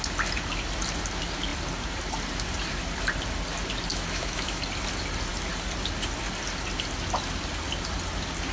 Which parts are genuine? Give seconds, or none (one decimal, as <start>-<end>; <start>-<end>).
0.0-3.9; 4.6-8.5